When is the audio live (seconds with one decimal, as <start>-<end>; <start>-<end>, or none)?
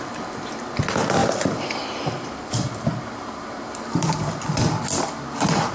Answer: 0.0-1.2; 4.6-5.7